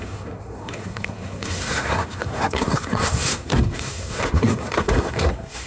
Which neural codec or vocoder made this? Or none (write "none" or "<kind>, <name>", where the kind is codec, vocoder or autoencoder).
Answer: codec, SNAC